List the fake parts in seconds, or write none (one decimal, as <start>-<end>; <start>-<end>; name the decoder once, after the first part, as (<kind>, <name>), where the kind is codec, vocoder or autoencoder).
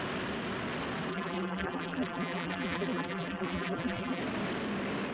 1.1-4.2 (vocoder, BigVGAN v2)